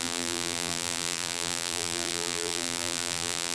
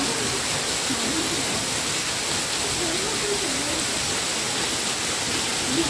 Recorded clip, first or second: second